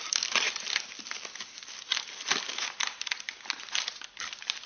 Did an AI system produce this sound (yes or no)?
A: no